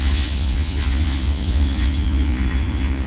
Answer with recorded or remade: remade